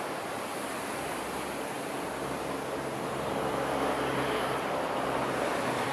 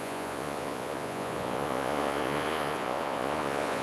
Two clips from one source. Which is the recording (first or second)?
first